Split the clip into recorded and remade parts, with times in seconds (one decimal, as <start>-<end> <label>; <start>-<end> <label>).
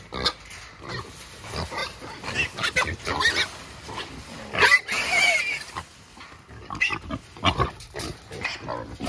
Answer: 0.0-9.1 recorded